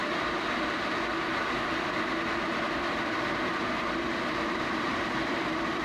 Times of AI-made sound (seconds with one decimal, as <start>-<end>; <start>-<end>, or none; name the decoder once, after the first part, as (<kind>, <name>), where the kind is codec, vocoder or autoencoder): 0.0-5.8 (vocoder, BigVGAN v2)